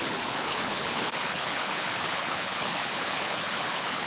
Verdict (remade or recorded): remade